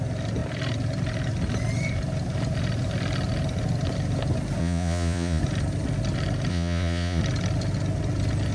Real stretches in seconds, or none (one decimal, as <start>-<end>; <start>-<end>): 0.0-4.6; 5.4-6.5; 7.2-8.5